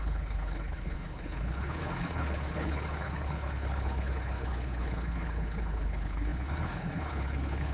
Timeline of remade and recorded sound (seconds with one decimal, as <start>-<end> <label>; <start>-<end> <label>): 0.0-7.7 remade